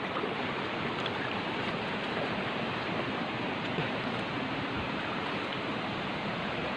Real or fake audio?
fake